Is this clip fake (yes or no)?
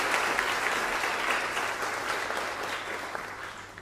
no